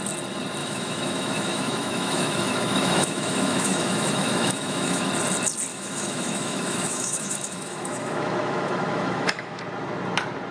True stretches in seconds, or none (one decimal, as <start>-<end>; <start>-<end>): 0.0-0.6; 5.1-5.7; 9.6-10.5